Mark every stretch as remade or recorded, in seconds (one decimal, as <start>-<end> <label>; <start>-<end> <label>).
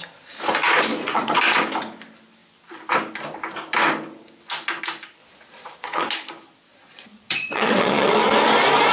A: 0.0-0.9 recorded; 0.9-1.4 remade; 1.4-5.2 recorded; 5.2-6.1 remade; 6.1-6.7 recorded; 6.7-8.2 remade; 8.2-8.9 recorded